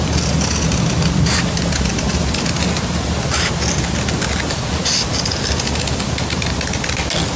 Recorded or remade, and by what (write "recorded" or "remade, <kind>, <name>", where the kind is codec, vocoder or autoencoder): recorded